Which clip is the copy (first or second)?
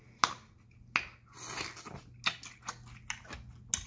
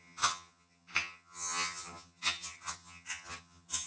second